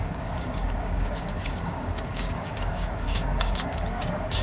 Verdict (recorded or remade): remade